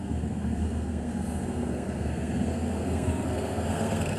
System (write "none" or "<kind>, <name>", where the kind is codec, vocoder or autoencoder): codec, SNAC